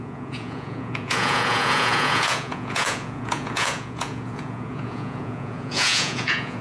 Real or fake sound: fake